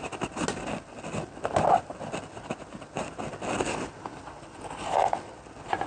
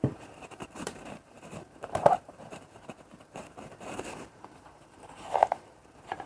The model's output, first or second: second